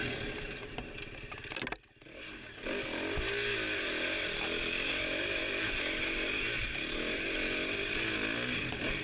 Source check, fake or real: real